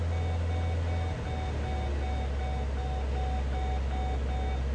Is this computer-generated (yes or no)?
no